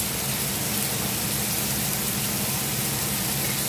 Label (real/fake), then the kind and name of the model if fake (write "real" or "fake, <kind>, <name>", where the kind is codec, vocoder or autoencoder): real